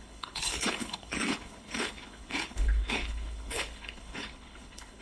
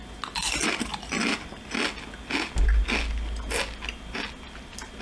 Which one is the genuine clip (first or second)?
second